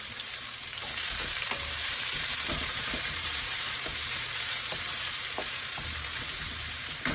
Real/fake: fake